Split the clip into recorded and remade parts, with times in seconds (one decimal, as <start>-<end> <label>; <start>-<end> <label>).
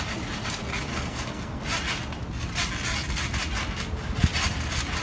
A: 0.0-0.9 recorded; 0.9-1.6 remade; 1.6-5.0 recorded